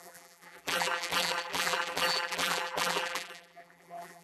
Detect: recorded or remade remade